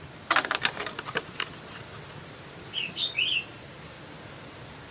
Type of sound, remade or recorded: recorded